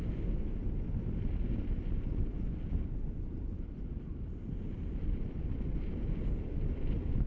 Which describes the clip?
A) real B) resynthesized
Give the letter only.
A